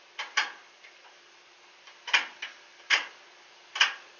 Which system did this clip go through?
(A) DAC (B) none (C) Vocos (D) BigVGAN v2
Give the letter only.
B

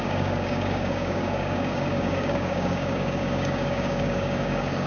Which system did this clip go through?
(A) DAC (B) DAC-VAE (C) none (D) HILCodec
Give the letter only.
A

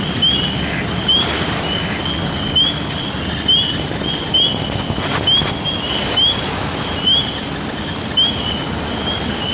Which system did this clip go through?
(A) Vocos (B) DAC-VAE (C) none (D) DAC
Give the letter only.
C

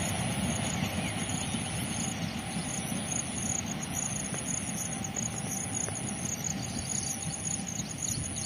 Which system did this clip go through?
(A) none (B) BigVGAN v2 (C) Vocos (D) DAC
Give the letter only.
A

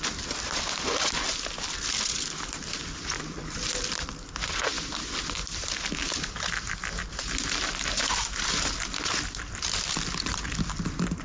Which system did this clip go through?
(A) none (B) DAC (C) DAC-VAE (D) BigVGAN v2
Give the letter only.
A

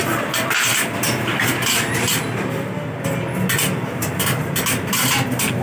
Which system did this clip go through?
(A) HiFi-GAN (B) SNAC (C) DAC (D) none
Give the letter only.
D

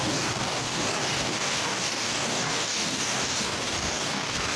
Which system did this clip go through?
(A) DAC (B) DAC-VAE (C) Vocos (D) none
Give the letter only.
A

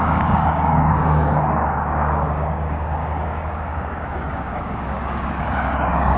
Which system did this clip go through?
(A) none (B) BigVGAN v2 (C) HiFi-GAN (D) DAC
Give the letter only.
D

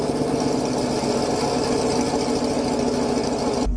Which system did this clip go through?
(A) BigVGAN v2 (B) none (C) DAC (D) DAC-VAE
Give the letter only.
B